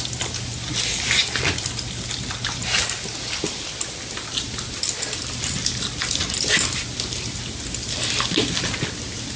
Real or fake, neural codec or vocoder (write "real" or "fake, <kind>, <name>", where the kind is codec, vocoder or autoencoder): real